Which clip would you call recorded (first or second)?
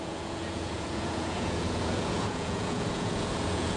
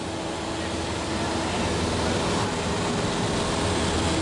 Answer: second